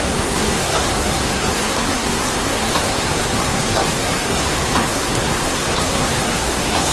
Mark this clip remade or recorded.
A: remade